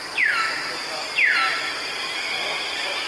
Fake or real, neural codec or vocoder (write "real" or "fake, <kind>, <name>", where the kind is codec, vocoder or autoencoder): real